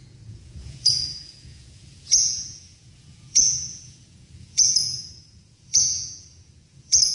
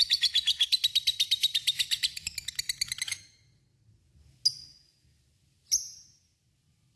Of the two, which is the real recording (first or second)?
second